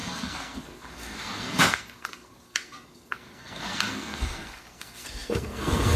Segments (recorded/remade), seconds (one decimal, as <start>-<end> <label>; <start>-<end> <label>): 0.0-6.0 remade